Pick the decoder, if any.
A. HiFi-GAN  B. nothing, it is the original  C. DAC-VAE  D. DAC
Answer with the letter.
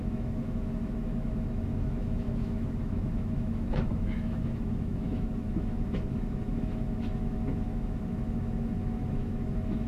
C